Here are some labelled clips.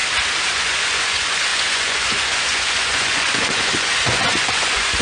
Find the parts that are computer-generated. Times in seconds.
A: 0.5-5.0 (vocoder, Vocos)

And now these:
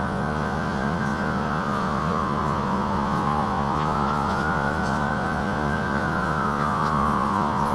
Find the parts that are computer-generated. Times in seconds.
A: 0.0-7.7 (vocoder, Vocos)